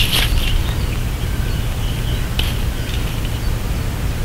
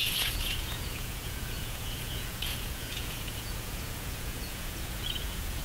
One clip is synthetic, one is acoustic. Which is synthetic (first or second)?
second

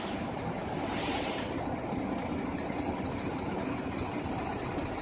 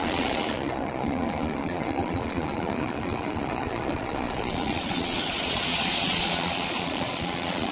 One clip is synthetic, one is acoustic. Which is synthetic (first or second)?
second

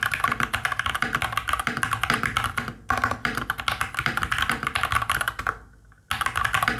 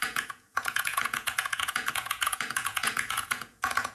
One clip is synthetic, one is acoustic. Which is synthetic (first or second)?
second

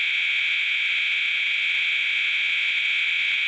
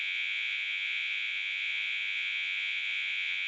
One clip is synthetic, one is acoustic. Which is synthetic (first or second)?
second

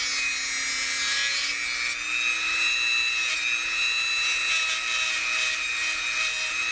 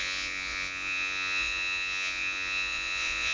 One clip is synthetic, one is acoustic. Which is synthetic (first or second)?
second